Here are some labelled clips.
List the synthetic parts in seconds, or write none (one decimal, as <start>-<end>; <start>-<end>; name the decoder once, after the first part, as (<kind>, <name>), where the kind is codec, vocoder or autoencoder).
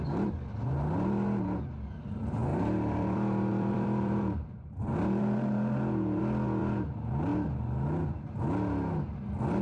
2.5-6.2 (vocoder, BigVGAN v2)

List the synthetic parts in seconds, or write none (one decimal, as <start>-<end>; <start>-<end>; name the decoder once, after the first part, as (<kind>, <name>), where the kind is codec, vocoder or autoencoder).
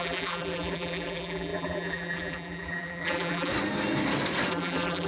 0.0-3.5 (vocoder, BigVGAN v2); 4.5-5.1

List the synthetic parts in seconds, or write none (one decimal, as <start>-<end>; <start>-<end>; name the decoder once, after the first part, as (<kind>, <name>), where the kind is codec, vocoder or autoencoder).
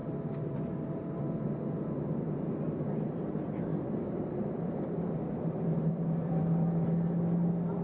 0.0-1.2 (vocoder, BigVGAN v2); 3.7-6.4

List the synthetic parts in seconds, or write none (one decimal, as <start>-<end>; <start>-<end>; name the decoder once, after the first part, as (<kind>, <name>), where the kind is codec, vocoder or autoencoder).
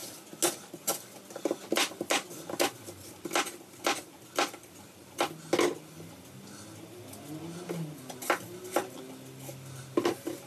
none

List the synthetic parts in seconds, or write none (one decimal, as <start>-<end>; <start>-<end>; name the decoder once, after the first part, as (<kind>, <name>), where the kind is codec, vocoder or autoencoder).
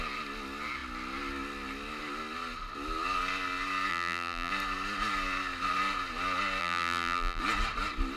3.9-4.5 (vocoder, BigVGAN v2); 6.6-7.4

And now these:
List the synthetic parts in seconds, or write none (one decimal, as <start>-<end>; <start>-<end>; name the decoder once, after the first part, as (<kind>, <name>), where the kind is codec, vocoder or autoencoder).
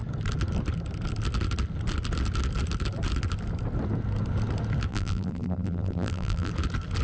4.9-6.5 (vocoder, BigVGAN v2)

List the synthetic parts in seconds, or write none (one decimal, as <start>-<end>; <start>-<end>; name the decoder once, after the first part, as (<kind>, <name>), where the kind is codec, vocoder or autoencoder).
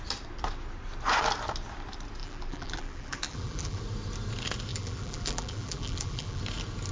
2.2-3.8 (vocoder, BigVGAN v2); 4.7-6.4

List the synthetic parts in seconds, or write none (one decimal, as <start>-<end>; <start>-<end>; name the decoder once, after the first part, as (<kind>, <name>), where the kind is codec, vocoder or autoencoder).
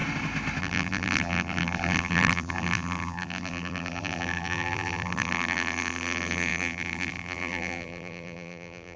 0.6-9.0 (vocoder, BigVGAN v2)